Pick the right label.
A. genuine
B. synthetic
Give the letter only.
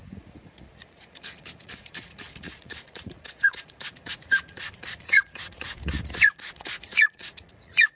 B